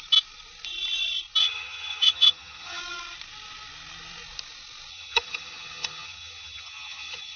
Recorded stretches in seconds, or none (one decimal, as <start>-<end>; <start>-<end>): 0.0-1.4; 2.8-4.9

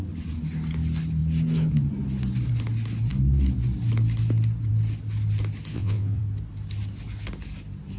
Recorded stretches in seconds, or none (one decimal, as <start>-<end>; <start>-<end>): 0.0-5.7; 6.2-8.0

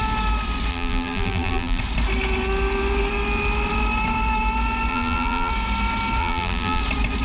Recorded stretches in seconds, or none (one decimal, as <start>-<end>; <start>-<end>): 0.0-0.7; 1.8-4.9; 5.5-6.2; 6.8-7.2